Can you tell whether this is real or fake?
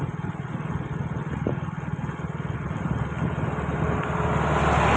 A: real